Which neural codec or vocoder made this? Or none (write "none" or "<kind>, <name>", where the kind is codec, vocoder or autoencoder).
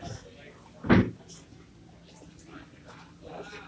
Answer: none